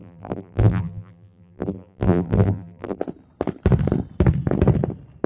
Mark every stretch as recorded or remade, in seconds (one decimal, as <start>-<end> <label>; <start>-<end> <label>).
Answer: 0.0-3.0 remade; 3.0-5.3 recorded